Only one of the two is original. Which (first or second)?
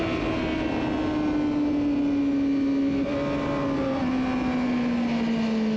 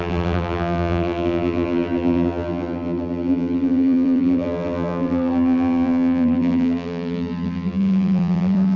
first